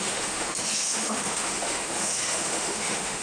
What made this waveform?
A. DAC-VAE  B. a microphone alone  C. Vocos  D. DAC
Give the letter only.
A